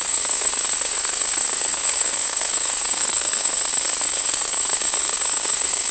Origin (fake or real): fake